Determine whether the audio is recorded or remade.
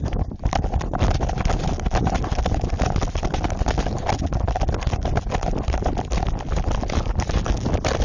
recorded